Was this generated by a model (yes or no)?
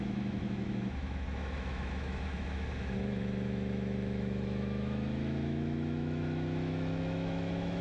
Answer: yes